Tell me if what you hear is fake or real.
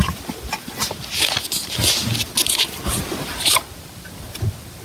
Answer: real